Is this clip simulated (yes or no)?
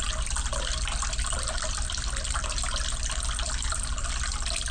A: no